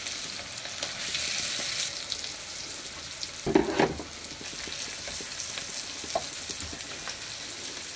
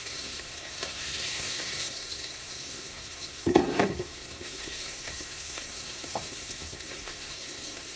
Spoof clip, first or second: second